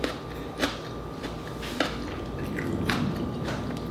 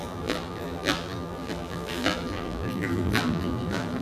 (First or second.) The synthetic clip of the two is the second